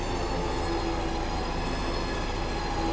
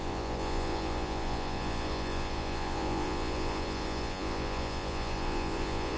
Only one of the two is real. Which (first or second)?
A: first